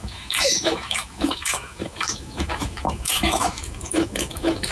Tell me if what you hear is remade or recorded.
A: remade